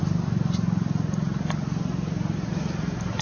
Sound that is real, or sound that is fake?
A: real